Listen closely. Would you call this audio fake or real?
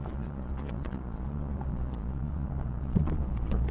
fake